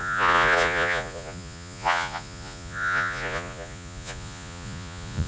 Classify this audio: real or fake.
fake